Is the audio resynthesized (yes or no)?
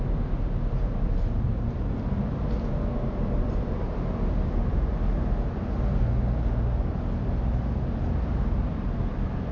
no